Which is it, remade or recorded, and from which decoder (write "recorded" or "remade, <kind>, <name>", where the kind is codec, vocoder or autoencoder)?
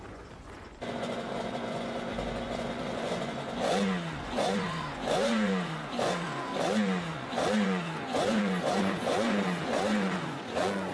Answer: remade, vocoder, Vocos